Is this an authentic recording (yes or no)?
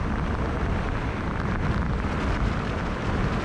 yes